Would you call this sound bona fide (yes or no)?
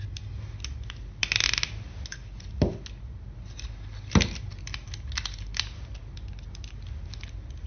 yes